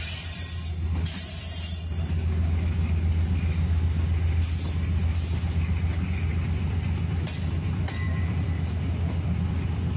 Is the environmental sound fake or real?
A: real